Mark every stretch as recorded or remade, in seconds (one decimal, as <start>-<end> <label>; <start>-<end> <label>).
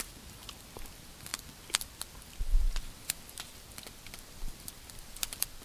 0.0-5.6 recorded